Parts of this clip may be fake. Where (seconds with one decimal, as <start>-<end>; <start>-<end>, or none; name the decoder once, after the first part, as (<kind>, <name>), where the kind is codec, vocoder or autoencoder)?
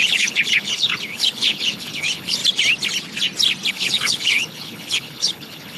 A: 0.0-2.4 (codec, HILCodec); 3.7-5.8